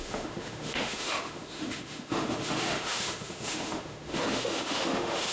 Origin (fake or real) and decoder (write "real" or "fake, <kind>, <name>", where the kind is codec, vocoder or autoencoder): fake, autoencoder, DAC-VAE